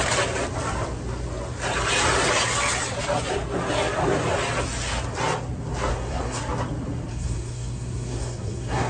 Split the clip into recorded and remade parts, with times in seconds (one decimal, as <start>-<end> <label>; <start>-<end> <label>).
0.0-5.9 recorded; 5.9-6.4 remade; 6.4-7.1 recorded; 7.1-8.9 remade

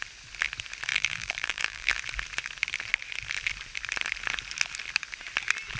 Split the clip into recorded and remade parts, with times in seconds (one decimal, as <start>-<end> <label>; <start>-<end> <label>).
0.0-0.9 recorded; 0.9-2.0 remade; 2.0-5.8 recorded

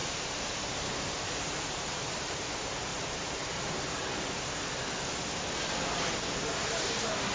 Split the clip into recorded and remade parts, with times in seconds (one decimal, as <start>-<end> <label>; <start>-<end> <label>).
0.0-2.4 remade; 2.4-2.9 recorded; 2.9-4.2 remade; 4.2-7.3 recorded

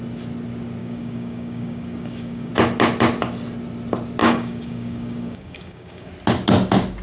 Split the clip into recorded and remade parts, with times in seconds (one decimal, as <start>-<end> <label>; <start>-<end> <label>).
0.0-0.8 recorded; 0.8-2.5 remade; 2.5-4.2 recorded; 4.2-6.1 remade; 6.1-7.0 recorded

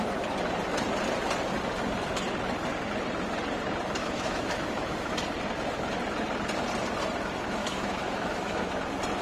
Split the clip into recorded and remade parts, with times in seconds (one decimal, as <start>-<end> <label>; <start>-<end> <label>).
0.0-4.0 recorded; 4.0-5.1 remade; 5.1-7.6 recorded; 7.6-8.7 remade; 8.7-9.2 recorded

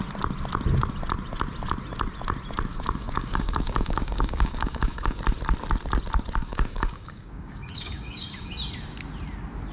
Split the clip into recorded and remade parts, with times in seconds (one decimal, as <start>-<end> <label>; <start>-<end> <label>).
0.0-2.7 recorded; 2.7-5.2 remade; 5.2-6.4 recorded; 6.4-8.5 remade; 8.5-9.7 recorded

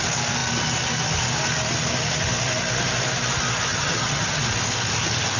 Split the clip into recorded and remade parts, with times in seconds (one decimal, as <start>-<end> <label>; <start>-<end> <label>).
0.0-3.7 recorded; 3.7-4.4 remade; 4.4-5.4 recorded